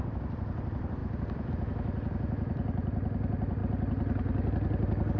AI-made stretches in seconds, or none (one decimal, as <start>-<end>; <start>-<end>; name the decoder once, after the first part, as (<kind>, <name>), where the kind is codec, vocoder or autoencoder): 0.0-3.6 (vocoder, BigVGAN v2)